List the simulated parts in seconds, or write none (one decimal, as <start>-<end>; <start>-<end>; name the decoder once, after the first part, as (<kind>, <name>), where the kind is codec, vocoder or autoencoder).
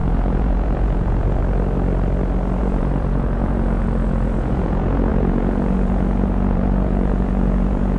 0.0-1.4 (vocoder, Vocos); 2.6-8.0